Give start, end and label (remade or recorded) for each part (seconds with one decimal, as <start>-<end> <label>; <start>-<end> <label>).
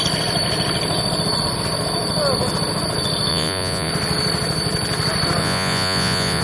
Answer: 0.0-3.3 recorded; 3.3-3.9 remade; 3.9-5.4 recorded; 5.4-6.4 remade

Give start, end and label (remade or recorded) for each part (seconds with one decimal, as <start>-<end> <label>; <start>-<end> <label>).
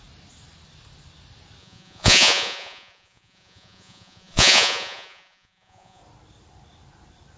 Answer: 0.0-1.6 recorded; 1.6-6.0 remade; 6.0-7.4 recorded